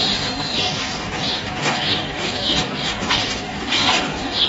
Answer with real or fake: fake